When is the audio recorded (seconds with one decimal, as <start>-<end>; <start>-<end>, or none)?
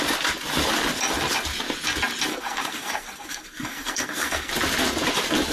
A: 0.0-2.3; 4.5-5.5